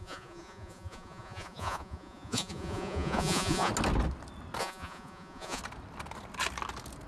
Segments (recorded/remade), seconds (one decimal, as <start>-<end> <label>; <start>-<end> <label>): 0.0-3.7 remade; 3.7-4.6 recorded; 4.6-5.6 remade; 5.6-7.1 recorded